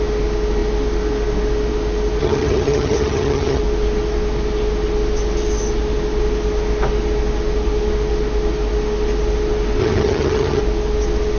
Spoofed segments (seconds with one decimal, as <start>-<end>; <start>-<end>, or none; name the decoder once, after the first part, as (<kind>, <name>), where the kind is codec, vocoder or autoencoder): 2.2-3.6 (vocoder, HiFi-GAN); 9.8-10.6